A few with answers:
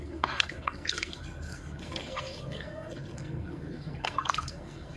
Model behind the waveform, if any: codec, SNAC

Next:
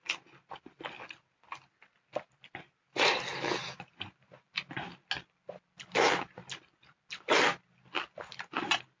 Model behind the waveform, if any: none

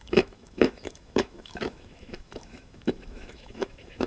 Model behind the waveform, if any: autoencoder, DAC-VAE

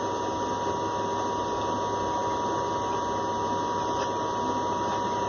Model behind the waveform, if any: none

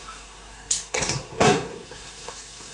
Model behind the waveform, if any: codec, SNAC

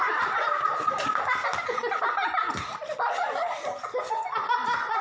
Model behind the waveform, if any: none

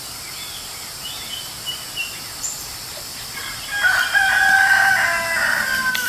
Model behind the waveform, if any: none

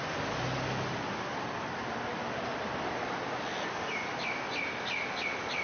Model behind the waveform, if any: none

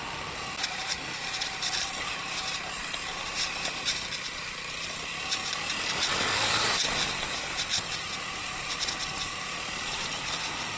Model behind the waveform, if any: none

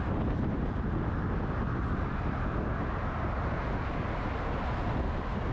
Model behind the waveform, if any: none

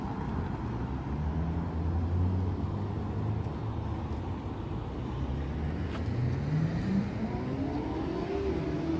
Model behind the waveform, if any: none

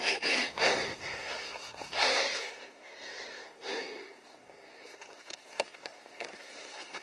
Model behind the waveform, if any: codec, SNAC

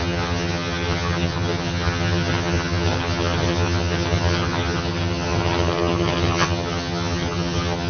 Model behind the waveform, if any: vocoder, HiFi-GAN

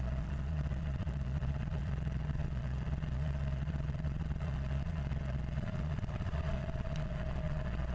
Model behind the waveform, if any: vocoder, Vocos